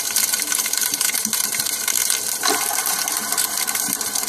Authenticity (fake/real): fake